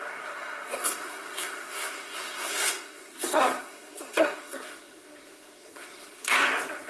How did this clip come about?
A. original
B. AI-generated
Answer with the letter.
B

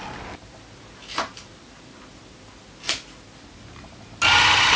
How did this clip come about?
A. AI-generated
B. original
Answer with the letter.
B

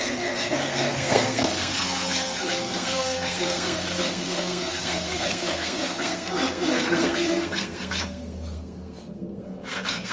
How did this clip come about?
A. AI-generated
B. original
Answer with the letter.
A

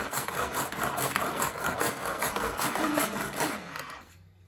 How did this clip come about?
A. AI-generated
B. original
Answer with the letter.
A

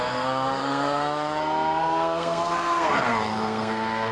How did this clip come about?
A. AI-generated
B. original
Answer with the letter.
A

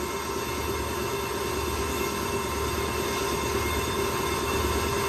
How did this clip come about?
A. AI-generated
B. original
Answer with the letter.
B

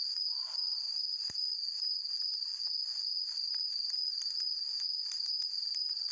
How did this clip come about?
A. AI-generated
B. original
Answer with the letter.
B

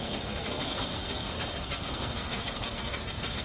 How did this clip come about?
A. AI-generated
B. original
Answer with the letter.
A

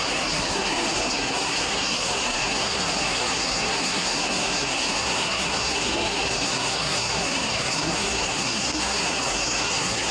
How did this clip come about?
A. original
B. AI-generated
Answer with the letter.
B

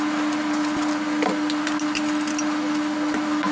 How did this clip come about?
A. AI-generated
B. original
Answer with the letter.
B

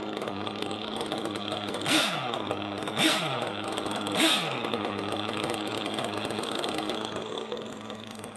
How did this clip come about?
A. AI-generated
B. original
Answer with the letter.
A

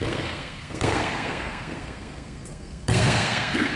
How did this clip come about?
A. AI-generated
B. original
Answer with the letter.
A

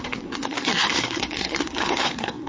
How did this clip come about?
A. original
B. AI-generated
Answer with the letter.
B